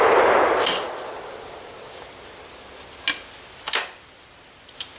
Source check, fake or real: real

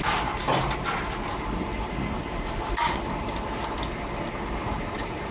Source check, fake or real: real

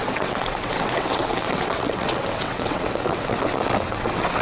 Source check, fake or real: fake